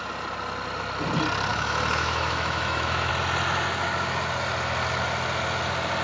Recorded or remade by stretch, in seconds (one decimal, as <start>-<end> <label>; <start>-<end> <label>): 0.0-1.5 recorded; 1.5-3.1 remade; 3.1-6.0 recorded